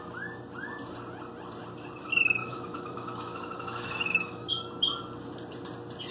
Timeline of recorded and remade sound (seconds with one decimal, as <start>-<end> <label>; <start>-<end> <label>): 0.0-2.4 recorded; 2.4-4.5 remade; 4.5-6.1 recorded